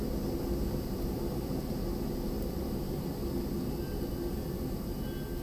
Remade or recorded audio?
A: recorded